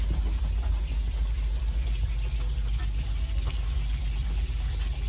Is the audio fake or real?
real